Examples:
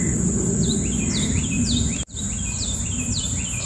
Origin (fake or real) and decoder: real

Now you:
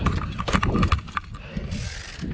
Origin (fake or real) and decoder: real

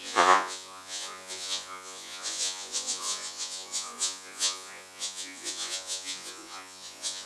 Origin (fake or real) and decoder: fake, vocoder, Vocos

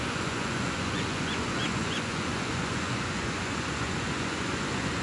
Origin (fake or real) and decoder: fake, vocoder, Vocos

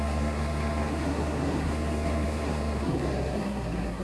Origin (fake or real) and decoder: fake, codec, SNAC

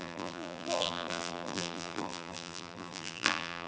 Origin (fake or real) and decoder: fake, vocoder, BigVGAN v2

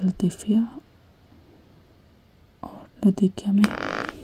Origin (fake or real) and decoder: real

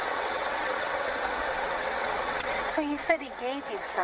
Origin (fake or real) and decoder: fake, vocoder, WaveNeXt